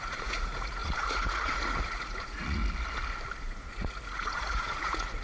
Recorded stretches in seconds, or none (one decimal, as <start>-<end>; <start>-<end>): 2.6-3.4